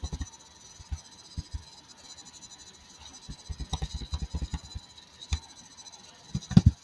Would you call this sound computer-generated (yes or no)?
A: no